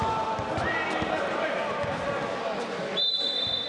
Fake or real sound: real